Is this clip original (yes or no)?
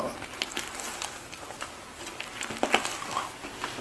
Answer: yes